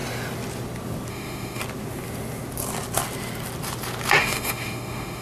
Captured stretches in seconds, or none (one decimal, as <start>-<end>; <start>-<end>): 0.0-1.1; 1.6-4.2